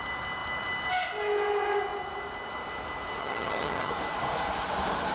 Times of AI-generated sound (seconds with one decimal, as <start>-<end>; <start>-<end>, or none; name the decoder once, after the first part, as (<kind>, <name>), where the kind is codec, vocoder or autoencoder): 3.2-3.9 (vocoder, HiFi-GAN)